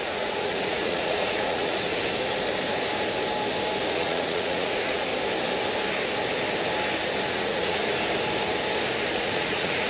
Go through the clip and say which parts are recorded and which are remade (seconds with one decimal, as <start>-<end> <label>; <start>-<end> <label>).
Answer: 0.0-1.9 remade; 1.9-3.9 recorded; 3.9-5.1 remade; 5.1-7.3 recorded; 7.3-7.8 remade; 7.8-9.1 recorded; 9.1-9.9 remade